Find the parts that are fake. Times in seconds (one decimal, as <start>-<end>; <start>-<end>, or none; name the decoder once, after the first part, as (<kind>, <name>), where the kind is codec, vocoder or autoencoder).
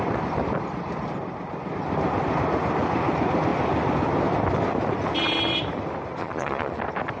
6.2-6.8 (vocoder, Vocos)